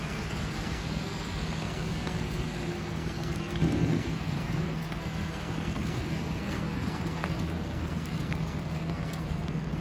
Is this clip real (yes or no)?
no